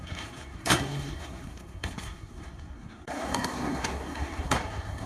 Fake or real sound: fake